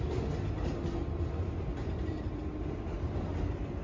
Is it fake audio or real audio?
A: real